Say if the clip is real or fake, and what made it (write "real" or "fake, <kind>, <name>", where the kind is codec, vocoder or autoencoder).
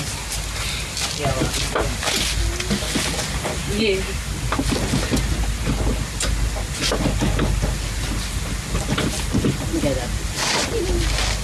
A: real